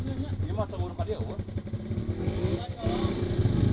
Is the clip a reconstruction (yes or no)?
no